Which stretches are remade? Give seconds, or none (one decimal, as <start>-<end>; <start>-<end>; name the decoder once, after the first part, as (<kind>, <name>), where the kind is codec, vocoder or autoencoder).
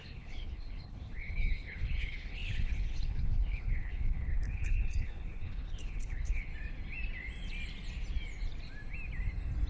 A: 0.0-6.5 (codec, HILCodec)